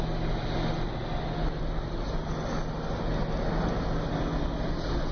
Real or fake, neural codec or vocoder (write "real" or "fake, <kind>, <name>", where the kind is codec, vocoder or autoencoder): real